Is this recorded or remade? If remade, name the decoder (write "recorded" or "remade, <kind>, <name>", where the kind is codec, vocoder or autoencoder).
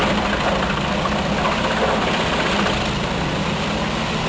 recorded